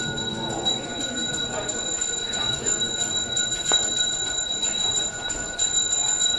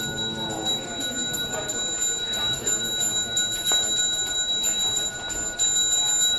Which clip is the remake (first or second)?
first